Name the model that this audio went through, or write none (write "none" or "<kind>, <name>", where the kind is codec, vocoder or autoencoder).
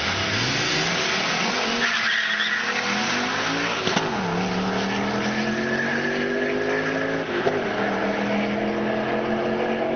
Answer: none